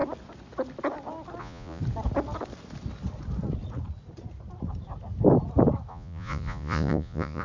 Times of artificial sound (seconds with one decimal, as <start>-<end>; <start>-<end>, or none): 1.4-1.8; 5.9-7.4